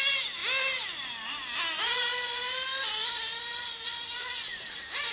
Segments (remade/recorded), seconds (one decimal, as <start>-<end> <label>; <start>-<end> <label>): 0.0-5.1 recorded